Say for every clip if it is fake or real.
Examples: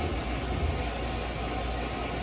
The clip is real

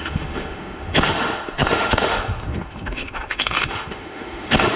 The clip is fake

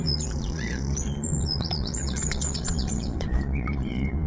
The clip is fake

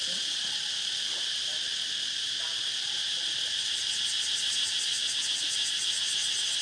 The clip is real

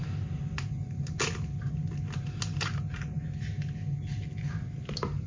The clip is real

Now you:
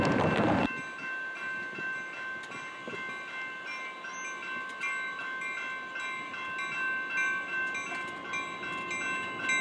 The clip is real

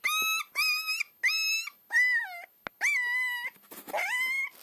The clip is real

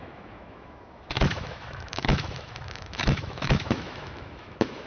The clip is fake